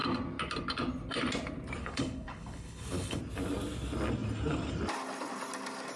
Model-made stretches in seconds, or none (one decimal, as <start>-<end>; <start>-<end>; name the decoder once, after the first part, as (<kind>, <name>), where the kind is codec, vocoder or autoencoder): 1.8-3.2 (codec, HILCodec)